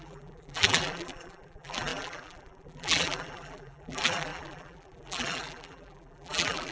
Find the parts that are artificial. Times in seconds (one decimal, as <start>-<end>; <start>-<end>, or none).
0.0-6.7